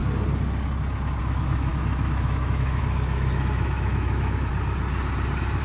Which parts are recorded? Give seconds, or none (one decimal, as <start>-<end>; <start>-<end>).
0.0-1.2; 4.5-5.6